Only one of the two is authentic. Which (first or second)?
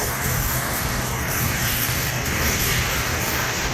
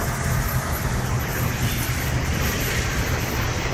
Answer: second